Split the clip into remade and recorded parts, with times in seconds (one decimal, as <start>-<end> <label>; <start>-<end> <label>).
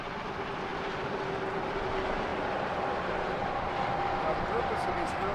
0.0-0.7 recorded; 0.7-1.9 remade; 1.9-2.3 recorded; 2.3-3.2 remade; 3.2-5.3 recorded